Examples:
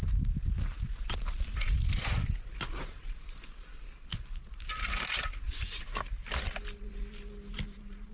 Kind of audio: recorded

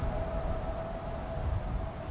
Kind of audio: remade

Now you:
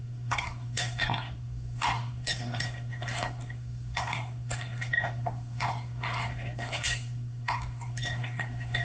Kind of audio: remade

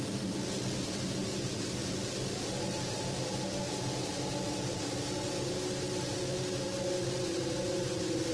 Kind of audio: recorded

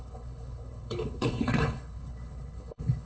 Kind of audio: remade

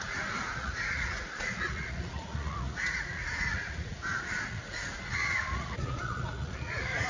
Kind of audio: remade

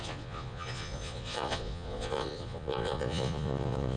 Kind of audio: remade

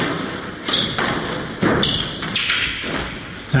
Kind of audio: recorded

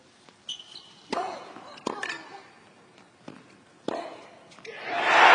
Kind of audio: recorded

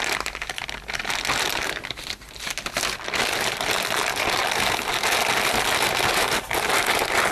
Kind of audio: recorded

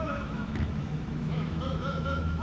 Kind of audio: remade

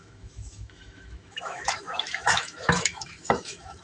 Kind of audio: remade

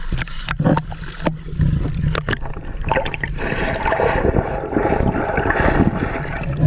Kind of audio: recorded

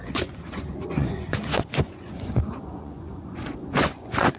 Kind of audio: remade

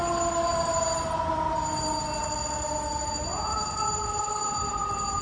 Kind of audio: recorded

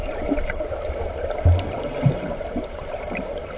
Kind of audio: remade